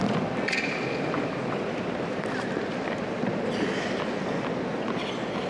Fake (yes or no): no